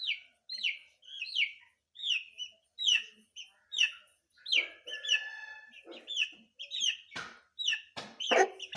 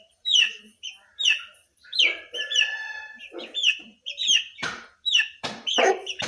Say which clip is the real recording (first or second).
first